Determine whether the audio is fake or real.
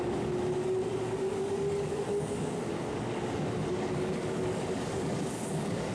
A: fake